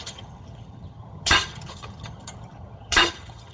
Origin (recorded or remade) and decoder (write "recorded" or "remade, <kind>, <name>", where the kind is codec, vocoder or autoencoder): remade, vocoder, HiFi-GAN